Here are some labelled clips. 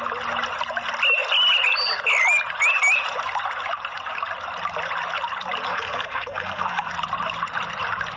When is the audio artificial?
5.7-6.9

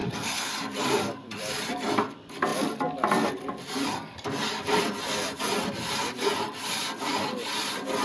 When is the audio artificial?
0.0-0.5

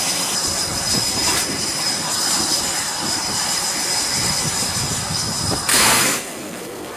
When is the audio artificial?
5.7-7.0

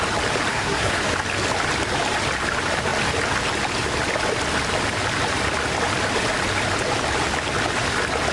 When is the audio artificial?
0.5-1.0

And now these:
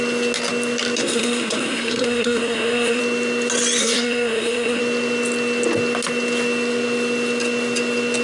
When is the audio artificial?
1.0-3.0; 3.8-4.8

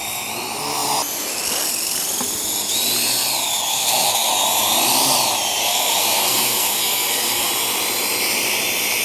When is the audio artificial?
3.7-4.3; 5.6-7.5